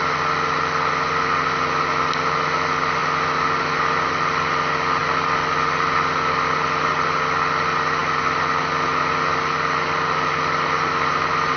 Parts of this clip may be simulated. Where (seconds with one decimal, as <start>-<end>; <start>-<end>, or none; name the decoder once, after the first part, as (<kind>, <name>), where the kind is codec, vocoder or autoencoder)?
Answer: none